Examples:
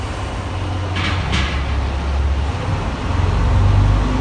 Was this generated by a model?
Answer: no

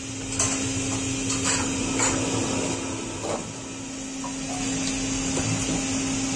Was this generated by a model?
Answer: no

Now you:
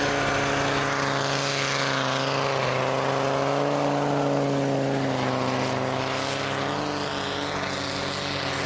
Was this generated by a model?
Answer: no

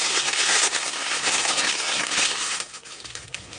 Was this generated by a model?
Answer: yes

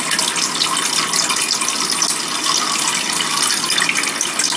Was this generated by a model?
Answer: no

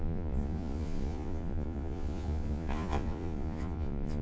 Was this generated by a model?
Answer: yes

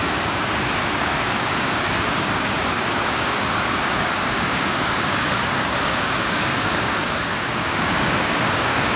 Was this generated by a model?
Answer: yes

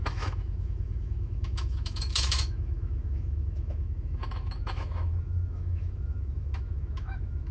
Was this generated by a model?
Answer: yes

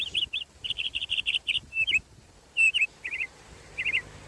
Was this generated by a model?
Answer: yes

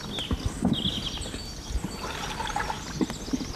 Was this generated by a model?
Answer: no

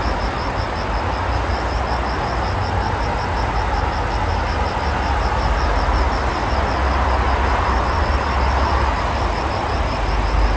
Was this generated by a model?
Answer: no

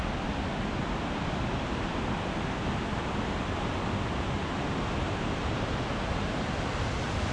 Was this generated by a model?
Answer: no